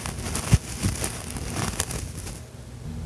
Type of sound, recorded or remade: recorded